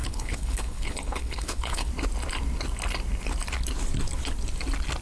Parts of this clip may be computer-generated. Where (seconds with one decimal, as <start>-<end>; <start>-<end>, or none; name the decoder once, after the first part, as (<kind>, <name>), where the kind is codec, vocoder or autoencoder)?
0.0-1.9 (codec, HILCodec)